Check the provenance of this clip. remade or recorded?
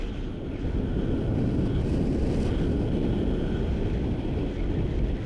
recorded